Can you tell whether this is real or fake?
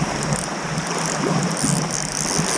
real